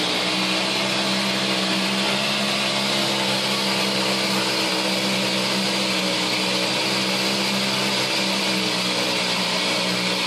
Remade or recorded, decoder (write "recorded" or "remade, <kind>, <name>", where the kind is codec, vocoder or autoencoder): recorded